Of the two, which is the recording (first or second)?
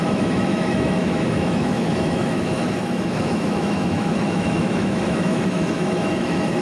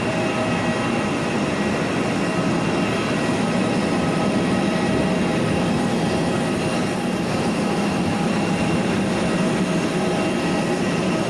second